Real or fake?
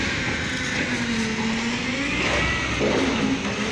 real